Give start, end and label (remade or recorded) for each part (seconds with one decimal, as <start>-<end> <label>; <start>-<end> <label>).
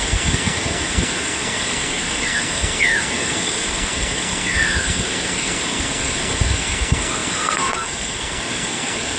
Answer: 0.0-9.2 remade